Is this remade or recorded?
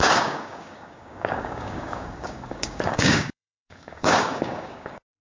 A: remade